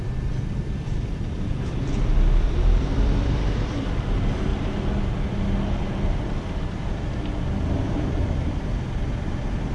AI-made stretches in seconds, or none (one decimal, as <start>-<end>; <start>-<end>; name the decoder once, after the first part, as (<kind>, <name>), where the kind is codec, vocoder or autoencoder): 0.0-4.5 (vocoder, BigVGAN v2)